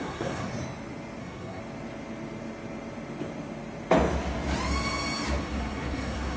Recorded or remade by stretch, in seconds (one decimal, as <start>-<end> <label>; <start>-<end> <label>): 0.0-0.5 remade; 0.5-1.2 recorded; 1.2-1.6 remade; 1.6-5.4 recorded; 5.4-6.4 remade